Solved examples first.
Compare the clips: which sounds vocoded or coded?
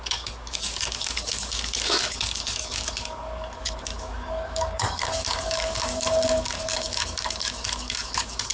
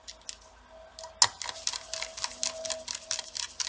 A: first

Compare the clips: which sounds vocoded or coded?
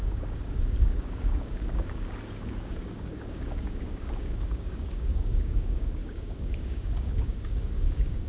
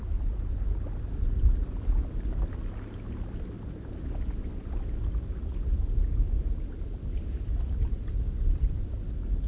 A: first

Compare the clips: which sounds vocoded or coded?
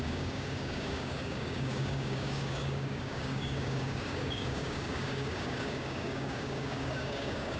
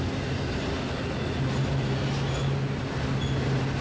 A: first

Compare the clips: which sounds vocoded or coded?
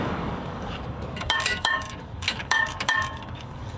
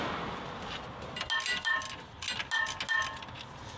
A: first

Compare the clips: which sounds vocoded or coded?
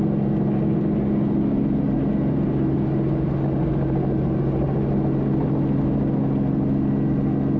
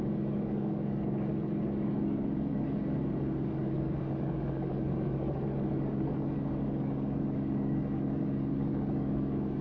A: second